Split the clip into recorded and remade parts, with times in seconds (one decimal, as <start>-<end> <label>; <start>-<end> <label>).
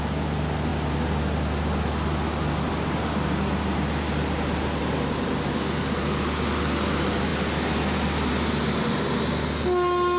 0.0-10.2 recorded